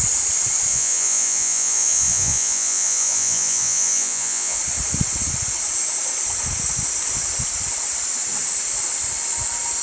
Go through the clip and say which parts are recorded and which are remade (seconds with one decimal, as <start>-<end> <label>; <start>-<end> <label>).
0.0-0.7 recorded; 0.7-4.6 remade; 4.6-9.8 recorded